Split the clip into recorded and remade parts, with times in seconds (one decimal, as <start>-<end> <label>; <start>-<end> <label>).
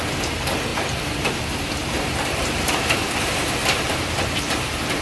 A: 0.0-5.0 remade